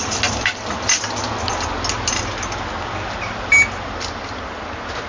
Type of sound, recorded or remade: recorded